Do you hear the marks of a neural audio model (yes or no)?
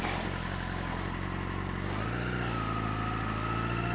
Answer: no